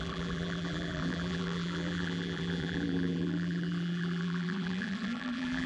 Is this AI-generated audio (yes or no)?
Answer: yes